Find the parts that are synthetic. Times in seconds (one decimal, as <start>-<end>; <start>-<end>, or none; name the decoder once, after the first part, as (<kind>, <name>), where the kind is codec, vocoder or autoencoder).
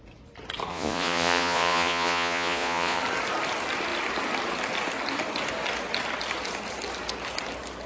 0.7-3.0 (vocoder, Vocos)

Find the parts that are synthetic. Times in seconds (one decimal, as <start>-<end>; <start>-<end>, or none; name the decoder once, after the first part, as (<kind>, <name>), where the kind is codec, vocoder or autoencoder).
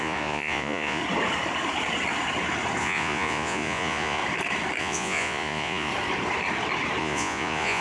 0.0-1.0 (vocoder, Vocos); 2.8-4.2; 4.8-5.9; 7.0-7.8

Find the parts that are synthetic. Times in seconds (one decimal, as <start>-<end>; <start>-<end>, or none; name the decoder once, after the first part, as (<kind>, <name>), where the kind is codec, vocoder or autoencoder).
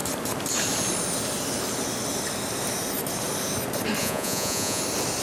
4.0-4.8 (vocoder, Vocos)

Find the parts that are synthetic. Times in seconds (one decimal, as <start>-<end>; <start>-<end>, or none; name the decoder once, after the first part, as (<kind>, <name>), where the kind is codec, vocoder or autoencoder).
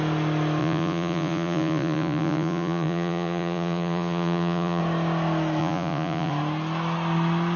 0.6-4.8 (vocoder, Vocos); 5.6-6.3